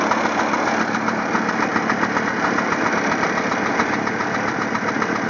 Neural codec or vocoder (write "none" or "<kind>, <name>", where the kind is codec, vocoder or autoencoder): none